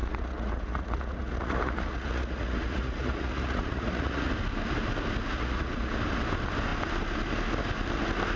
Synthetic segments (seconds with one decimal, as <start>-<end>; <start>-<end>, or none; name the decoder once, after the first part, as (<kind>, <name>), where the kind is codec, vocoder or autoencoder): 0.0-4.3 (vocoder, Vocos); 5.3-5.9